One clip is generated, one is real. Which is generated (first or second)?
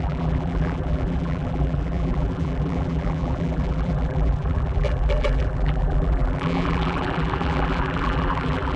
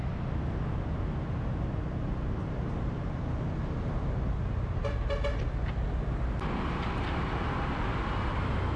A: first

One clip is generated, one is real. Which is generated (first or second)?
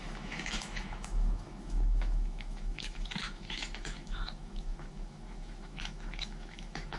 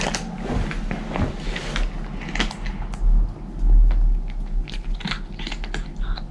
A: first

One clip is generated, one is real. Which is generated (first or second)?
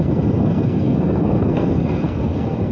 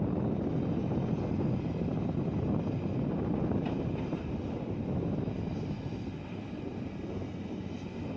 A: first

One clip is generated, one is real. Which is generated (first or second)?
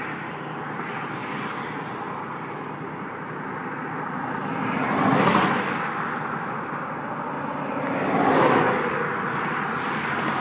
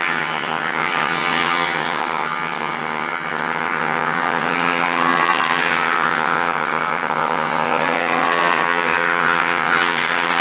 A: second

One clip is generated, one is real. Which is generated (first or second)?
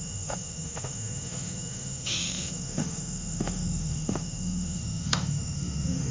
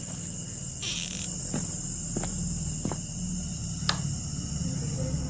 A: first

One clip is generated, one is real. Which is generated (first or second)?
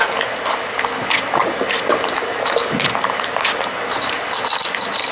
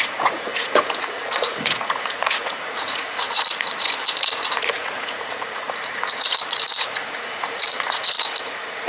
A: second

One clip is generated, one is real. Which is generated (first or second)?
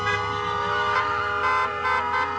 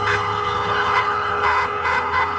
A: second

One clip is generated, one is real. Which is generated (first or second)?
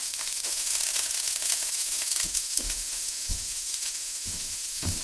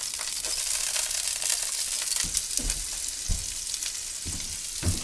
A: first